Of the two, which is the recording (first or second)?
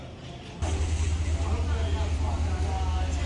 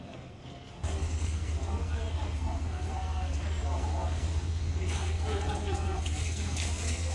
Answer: first